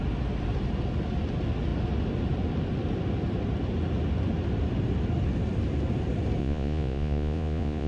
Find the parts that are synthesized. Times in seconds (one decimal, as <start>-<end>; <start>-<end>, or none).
6.4-7.9